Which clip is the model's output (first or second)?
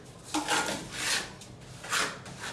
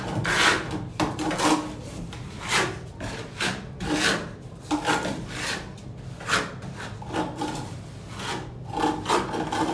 second